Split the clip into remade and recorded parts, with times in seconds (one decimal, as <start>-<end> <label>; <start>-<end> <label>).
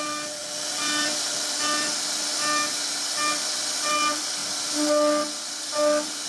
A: 0.0-6.3 recorded